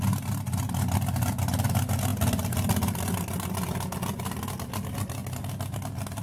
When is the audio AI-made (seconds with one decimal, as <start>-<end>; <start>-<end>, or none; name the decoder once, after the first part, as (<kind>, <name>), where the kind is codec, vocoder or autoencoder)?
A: none